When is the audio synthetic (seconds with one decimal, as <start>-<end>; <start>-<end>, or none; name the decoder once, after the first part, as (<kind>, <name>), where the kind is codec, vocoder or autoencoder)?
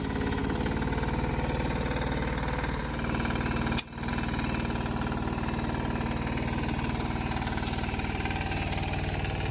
none